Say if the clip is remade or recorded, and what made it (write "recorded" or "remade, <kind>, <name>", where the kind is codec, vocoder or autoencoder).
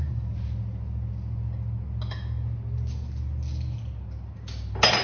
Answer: recorded